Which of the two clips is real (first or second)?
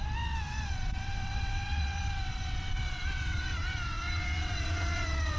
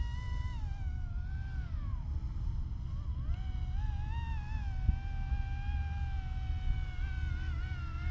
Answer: second